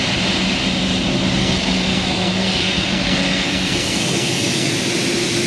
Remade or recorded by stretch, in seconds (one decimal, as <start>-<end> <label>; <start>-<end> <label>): 0.0-1.4 recorded; 1.4-4.7 remade; 4.7-5.5 recorded